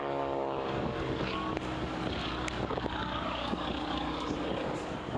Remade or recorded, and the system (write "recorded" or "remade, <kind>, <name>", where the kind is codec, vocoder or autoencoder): remade, codec, DAC